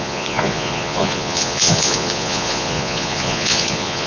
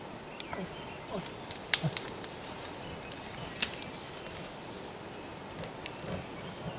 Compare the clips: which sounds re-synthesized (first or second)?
first